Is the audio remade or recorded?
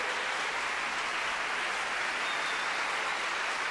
recorded